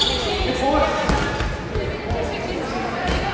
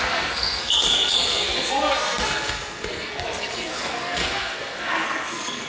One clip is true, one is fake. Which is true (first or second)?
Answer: first